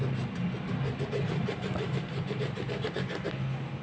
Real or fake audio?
real